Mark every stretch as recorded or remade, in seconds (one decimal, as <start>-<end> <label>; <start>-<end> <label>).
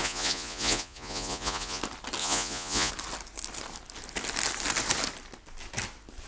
0.0-1.8 remade; 1.8-2.2 recorded; 2.2-2.9 remade; 2.9-6.3 recorded